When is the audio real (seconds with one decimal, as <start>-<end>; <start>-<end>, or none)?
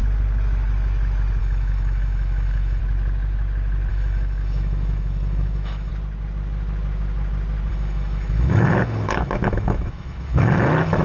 0.0-1.4; 2.8-3.9; 5.9-7.7